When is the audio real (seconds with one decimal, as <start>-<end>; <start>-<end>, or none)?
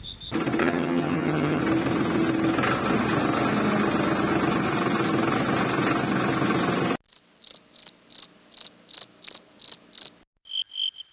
0.0-0.6; 1.6-11.1